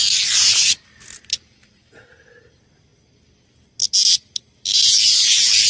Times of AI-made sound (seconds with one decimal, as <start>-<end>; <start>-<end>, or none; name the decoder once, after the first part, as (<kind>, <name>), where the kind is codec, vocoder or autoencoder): none